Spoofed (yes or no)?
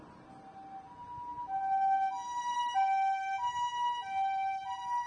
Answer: no